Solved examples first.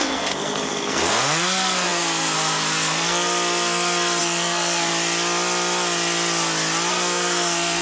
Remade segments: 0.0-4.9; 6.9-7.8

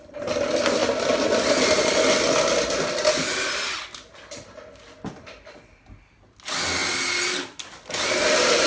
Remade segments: none

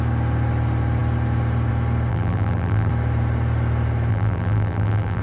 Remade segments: 2.1-2.9; 4.1-5.2

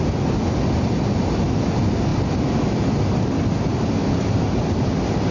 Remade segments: none

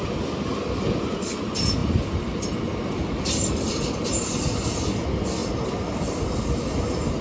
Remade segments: none

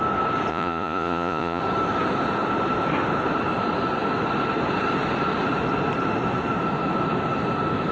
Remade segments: 0.5-1.6